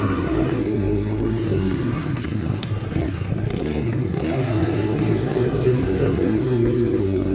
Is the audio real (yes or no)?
no